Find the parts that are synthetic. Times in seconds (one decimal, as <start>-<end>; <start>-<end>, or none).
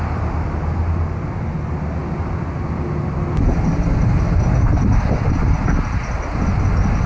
none